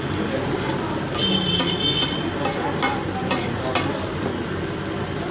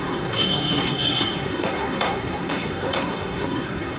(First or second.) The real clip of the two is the first